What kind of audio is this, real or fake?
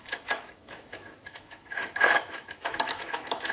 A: fake